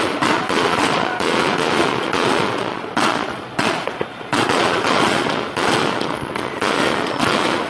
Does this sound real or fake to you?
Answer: fake